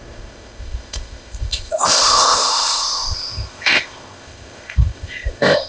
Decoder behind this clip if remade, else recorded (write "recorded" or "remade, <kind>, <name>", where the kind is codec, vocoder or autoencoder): remade, codec, ZipCodec